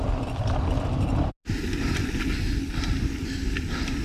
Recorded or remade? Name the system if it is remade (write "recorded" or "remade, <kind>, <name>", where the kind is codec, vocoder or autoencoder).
recorded